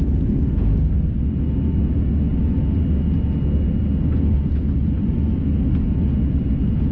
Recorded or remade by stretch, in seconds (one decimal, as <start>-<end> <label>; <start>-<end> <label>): 0.0-6.9 recorded